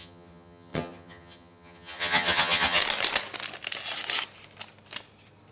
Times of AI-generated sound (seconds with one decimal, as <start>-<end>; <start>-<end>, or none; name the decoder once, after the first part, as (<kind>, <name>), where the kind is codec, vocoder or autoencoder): 0.0-2.8 (vocoder, HiFi-GAN)